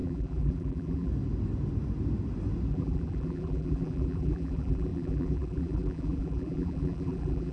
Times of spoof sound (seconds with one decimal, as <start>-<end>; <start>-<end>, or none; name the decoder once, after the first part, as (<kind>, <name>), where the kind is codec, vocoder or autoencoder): 0.0-1.1 (vocoder, BigVGAN v2); 2.7-7.5